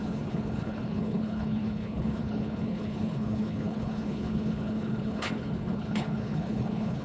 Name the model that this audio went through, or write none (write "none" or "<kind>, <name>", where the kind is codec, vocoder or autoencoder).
codec, HILCodec